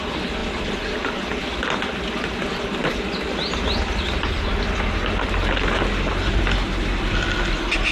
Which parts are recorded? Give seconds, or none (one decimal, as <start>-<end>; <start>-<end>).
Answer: 0.0-7.9